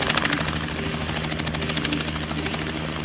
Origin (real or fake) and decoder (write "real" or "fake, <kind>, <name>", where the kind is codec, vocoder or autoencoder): real